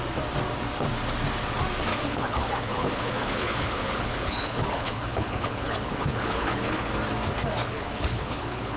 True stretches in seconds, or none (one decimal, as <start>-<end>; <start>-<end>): 0.0-1.9; 6.9-7.6